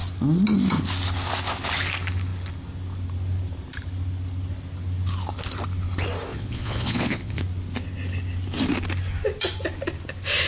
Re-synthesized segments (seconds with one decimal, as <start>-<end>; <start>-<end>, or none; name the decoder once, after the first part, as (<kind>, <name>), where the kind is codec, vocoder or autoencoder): 6.3-7.4 (vocoder, Vocos)